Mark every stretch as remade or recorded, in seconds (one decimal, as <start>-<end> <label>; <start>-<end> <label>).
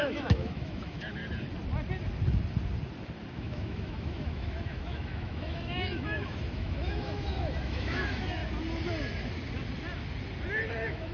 0.0-1.2 remade; 1.2-3.3 recorded; 3.3-8.4 remade; 8.4-10.7 recorded; 10.7-11.1 remade